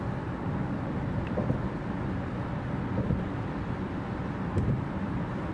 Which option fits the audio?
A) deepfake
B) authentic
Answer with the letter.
A